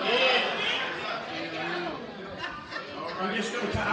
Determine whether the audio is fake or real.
real